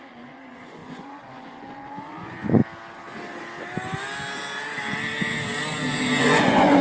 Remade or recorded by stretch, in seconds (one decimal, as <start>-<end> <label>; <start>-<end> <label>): 0.0-2.6 remade; 2.6-6.2 recorded; 6.2-6.8 remade

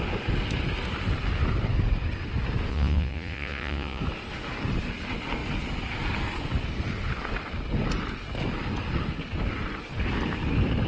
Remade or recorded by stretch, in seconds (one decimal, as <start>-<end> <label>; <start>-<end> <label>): 0.0-2.7 recorded; 2.7-4.0 remade; 4.0-10.9 recorded

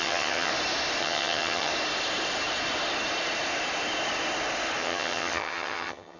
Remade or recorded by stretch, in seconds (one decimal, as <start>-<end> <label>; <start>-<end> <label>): 0.0-0.5 remade; 0.5-1.0 recorded; 1.0-1.7 remade; 1.7-4.8 recorded; 4.8-6.2 remade